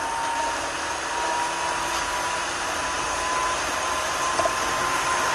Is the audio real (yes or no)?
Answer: yes